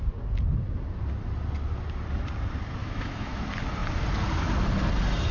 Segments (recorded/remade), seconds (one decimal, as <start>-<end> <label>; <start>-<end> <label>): 0.0-2.8 recorded; 2.8-3.4 remade; 3.4-5.3 recorded